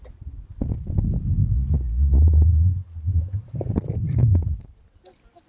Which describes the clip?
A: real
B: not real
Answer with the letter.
A